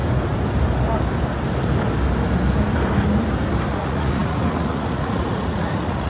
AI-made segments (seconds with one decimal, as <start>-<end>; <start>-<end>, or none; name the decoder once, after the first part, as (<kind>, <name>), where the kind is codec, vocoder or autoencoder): 3.7-6.1 (vocoder, Vocos)